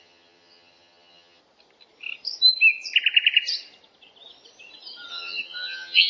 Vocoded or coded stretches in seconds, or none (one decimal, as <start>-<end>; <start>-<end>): 0.0-1.4; 5.1-6.1